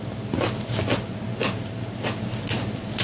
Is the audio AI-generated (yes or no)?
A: no